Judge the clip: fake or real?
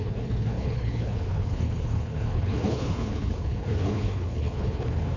fake